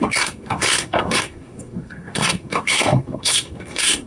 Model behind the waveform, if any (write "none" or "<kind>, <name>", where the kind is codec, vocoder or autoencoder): codec, SNAC